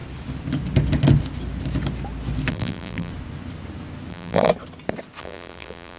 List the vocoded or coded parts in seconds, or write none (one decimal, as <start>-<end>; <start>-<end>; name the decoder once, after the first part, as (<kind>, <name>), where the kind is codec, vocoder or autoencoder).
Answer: 2.5-3.1 (vocoder, BigVGAN v2); 4.1-4.5; 5.2-6.0